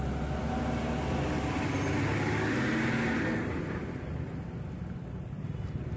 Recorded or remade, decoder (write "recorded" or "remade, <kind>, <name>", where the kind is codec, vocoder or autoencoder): recorded